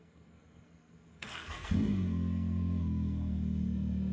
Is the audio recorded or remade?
remade